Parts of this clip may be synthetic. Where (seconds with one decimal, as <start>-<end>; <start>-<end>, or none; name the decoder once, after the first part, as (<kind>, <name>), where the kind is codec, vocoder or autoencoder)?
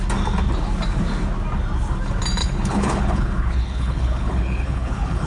2.4-5.3 (codec, HILCodec)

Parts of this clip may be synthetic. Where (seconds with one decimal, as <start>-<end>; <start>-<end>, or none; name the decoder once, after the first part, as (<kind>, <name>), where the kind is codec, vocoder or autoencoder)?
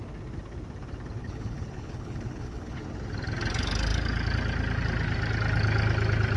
1.2-2.8 (codec, HILCodec)